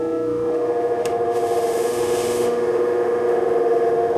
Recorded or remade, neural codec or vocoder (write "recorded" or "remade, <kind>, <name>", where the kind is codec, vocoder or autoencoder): remade, autoencoder, DAC-VAE